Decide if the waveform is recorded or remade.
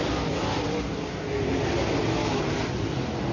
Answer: recorded